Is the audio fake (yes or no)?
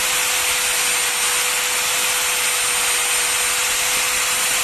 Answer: no